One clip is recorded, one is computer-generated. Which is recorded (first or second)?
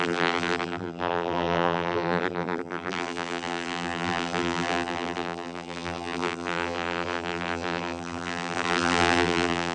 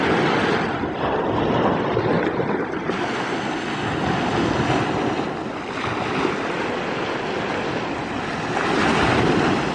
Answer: second